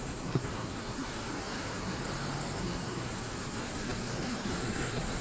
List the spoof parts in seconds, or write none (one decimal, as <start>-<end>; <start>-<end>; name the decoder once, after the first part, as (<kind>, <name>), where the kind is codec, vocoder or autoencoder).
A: 0.0-2.0 (codec, SNAC); 2.6-5.2